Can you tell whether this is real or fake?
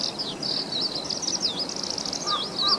real